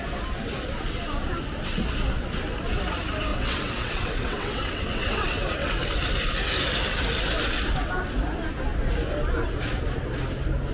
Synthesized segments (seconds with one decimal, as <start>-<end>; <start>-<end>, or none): 3.3-5.7